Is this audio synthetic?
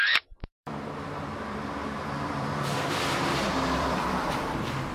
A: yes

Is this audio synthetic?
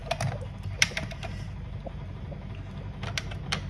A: no